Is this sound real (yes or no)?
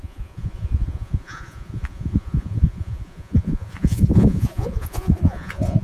no